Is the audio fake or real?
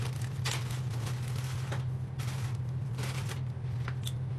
real